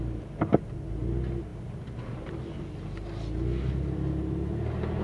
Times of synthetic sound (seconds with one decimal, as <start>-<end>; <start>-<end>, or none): none